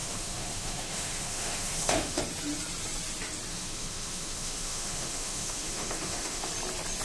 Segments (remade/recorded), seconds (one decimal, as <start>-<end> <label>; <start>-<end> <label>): 0.0-2.2 remade; 2.2-3.5 recorded; 3.5-6.5 remade; 6.5-7.0 recorded